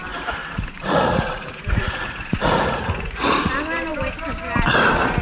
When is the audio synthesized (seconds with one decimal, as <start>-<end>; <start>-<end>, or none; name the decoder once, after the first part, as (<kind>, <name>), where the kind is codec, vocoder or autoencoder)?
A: 0.4-3.5 (vocoder, Vocos)